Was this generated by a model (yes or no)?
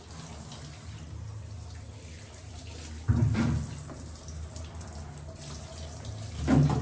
no